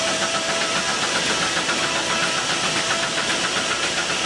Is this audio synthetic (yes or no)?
no